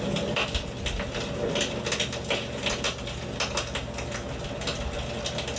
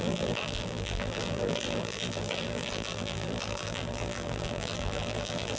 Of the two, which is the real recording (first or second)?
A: first